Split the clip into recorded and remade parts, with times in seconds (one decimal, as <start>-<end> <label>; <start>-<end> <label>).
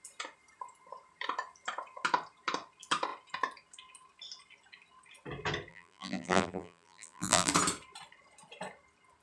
0.0-5.7 recorded; 5.7-7.5 remade; 7.5-9.2 recorded